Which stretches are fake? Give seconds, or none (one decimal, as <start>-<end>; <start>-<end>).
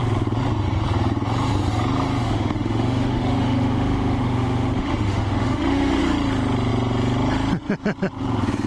2.2-6.0